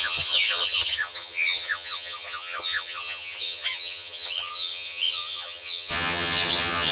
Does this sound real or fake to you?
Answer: fake